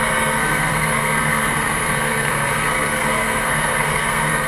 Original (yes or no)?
no